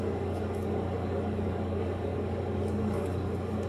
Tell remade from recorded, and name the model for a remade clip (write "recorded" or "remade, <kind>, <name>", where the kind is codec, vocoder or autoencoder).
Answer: remade, codec, DAC